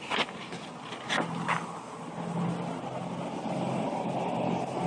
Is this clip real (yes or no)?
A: yes